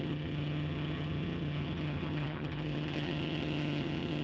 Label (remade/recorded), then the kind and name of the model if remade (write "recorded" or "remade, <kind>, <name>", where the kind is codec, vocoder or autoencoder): remade, vocoder, HiFi-GAN